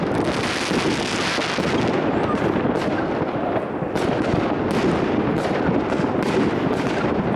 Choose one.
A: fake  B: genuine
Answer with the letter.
B